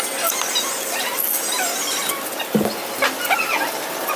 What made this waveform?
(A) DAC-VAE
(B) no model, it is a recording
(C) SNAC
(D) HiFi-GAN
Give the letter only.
B